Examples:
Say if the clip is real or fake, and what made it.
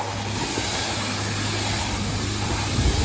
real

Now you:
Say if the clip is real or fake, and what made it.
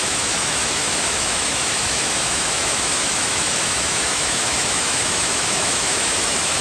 fake, autoencoder, DAC-VAE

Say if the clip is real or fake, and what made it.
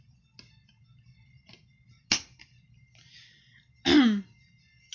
real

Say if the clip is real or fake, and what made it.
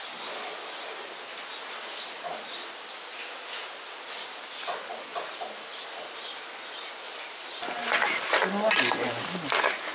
real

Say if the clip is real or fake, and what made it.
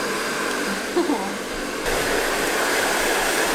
real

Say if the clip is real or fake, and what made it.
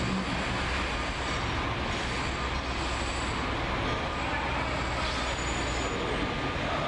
real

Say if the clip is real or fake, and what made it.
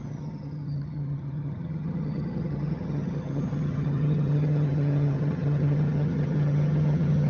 fake, vocoder, HiFi-GAN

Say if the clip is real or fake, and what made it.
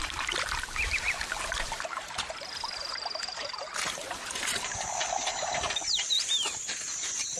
fake, vocoder, BigVGAN v2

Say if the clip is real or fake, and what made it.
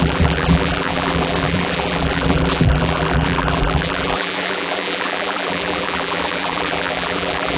fake, vocoder, BigVGAN v2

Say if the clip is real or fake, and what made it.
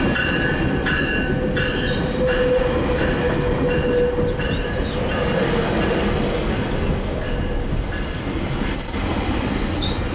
real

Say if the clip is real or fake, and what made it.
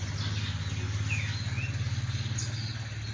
real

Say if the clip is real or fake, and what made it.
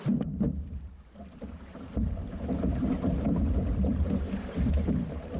fake, vocoder, BigVGAN v2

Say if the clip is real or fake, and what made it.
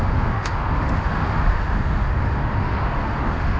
fake, autoencoder, DAC-VAE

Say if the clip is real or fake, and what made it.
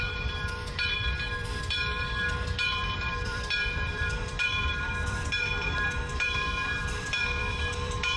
fake, vocoder, BigVGAN v2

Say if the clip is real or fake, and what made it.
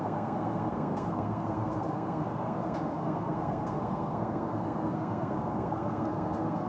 fake, codec, SNAC